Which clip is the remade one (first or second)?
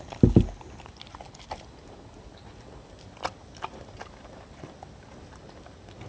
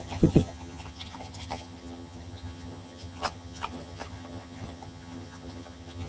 second